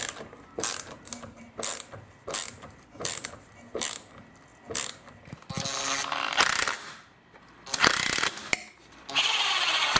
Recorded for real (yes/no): yes